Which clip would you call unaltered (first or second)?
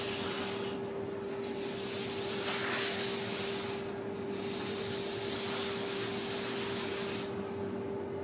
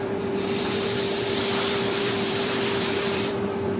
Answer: first